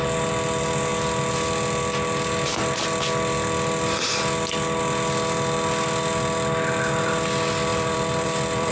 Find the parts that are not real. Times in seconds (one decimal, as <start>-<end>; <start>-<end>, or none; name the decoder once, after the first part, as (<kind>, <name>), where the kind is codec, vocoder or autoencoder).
7.7-8.7 (vocoder, BigVGAN v2)

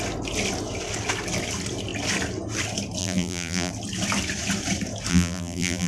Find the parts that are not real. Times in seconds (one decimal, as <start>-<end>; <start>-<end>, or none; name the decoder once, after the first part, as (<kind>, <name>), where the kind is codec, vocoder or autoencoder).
3.0-3.7 (vocoder, BigVGAN v2); 5.1-5.9

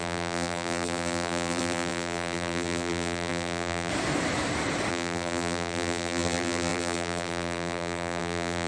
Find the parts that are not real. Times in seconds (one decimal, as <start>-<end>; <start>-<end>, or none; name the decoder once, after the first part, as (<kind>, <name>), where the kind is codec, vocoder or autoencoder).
0.0-3.9 (vocoder, BigVGAN v2); 4.9-8.7

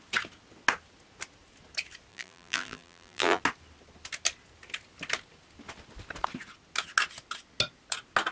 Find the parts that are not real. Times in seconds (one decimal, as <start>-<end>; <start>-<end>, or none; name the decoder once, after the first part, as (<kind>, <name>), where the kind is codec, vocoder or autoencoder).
2.1-3.4 (vocoder, BigVGAN v2)

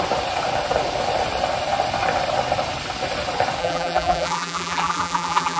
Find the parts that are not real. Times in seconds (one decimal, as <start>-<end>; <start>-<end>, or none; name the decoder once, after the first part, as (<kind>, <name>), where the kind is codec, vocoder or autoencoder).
3.6-5.6 (vocoder, BigVGAN v2)

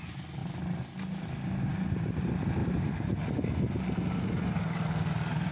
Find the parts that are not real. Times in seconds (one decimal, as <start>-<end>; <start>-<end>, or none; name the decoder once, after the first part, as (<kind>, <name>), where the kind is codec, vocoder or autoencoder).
none

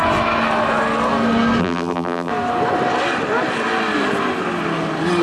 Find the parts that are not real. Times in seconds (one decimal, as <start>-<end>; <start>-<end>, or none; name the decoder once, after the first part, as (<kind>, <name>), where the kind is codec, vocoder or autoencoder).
1.6-2.3 (vocoder, BigVGAN v2)

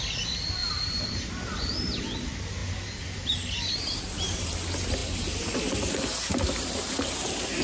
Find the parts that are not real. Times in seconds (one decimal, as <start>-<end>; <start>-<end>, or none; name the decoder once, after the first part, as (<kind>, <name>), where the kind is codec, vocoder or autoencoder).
0.6-2.0 (vocoder, BigVGAN v2)